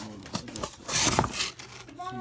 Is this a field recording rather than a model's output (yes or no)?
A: yes